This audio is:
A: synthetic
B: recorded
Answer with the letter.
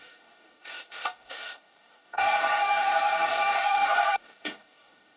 A